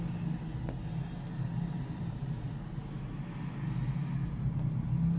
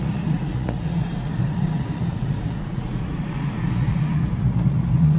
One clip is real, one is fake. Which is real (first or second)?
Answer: first